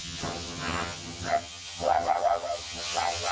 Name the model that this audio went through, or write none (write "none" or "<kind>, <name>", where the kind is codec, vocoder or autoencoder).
vocoder, HiFi-GAN